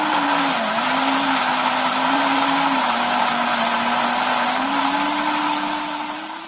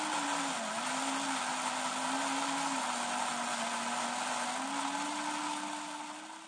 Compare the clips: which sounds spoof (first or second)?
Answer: first